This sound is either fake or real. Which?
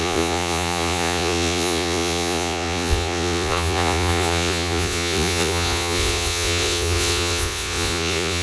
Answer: fake